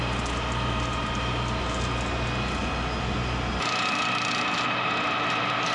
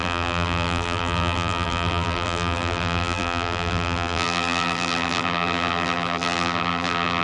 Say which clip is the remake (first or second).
second